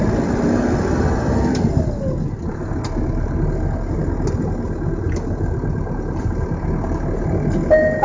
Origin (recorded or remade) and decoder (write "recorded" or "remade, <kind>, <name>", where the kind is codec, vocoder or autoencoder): recorded